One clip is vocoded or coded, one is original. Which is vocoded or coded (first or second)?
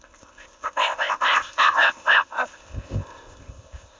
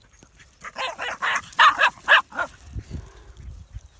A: first